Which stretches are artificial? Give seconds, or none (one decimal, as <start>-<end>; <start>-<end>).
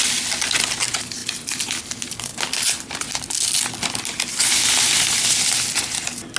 none